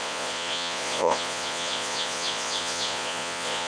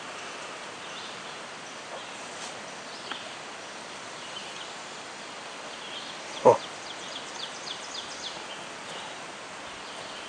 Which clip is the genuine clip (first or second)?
second